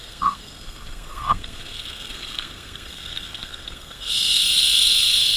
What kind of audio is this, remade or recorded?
remade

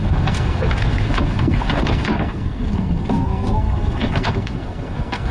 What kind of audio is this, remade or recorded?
remade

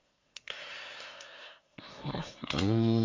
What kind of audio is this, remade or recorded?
remade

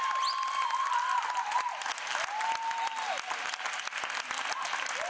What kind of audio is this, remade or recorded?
recorded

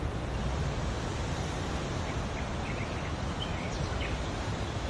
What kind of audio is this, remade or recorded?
recorded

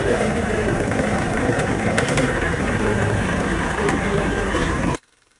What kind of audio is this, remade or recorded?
remade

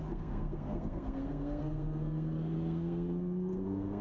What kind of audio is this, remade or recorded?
remade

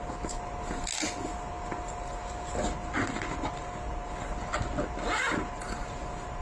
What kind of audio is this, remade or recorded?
recorded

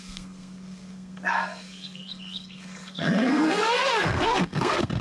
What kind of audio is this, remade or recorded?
remade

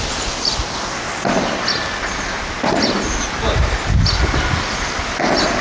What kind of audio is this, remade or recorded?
recorded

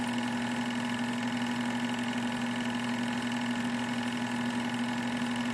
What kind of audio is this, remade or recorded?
recorded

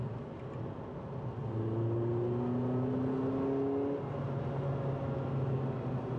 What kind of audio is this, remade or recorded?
recorded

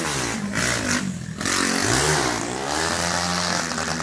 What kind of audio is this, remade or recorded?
recorded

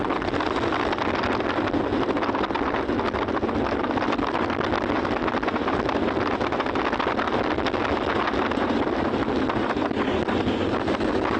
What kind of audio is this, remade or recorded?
recorded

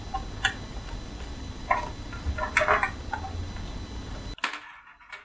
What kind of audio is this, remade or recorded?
recorded